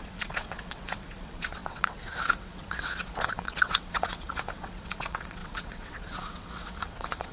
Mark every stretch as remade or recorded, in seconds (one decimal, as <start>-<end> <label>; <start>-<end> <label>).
0.0-7.3 remade